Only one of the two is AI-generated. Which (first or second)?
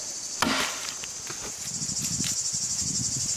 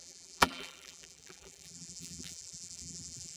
second